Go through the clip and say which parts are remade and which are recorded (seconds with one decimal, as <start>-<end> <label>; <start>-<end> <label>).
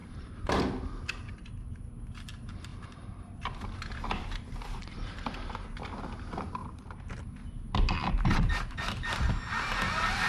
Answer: 0.0-0.6 remade; 0.6-1.2 recorded; 1.2-1.8 remade; 1.8-2.7 recorded; 2.7-5.7 remade; 5.7-6.6 recorded; 6.6-10.3 remade